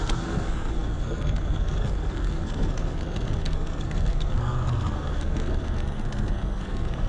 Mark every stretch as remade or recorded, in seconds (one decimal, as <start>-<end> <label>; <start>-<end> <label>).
0.0-7.1 remade

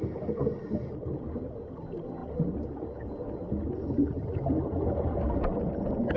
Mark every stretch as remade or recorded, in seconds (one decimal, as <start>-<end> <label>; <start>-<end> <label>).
0.0-6.2 recorded

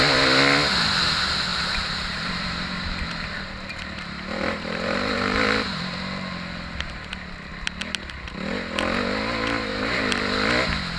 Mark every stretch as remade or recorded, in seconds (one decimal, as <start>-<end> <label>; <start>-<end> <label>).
0.0-1.5 recorded; 1.5-6.0 remade; 6.0-9.7 recorded; 9.7-10.2 remade; 10.2-11.0 recorded

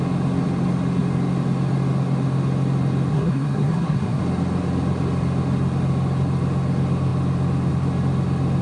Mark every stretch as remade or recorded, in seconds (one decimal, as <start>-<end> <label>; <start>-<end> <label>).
0.0-3.1 recorded; 3.1-4.2 remade; 4.2-8.6 recorded

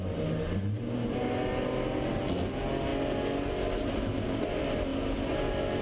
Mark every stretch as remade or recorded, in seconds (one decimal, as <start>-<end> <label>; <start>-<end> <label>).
0.0-5.8 recorded

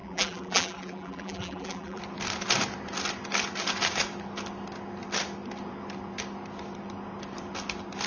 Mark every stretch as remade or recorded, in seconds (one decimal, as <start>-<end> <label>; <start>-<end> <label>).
0.0-2.0 remade; 2.0-8.1 recorded